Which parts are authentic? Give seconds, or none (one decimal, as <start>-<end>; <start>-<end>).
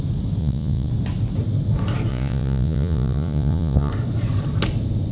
0.0-0.4; 0.9-2.1; 3.9-5.1